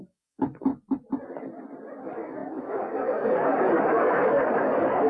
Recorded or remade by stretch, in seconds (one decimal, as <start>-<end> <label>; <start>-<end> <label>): 0.0-0.7 remade; 0.7-2.0 recorded; 2.0-5.1 remade